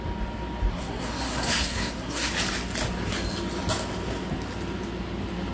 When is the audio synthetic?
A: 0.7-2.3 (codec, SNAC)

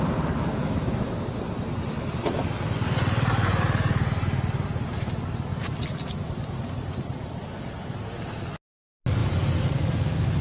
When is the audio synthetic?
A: 0.5-1.3 (autoencoder, DAC-VAE)

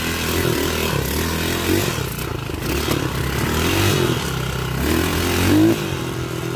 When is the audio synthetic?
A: none

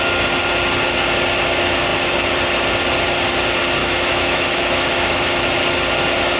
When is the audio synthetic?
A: 3.8-5.4 (autoencoder, DAC-VAE)

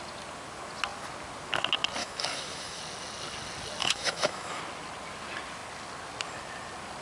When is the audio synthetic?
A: 2.0-2.8 (autoencoder, DAC-VAE); 3.8-4.6

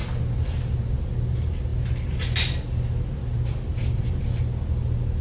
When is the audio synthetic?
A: none